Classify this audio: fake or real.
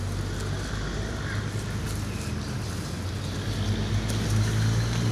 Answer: real